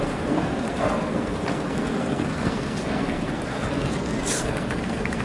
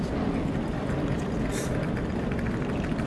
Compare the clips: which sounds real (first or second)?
second